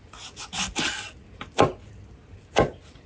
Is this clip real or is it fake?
real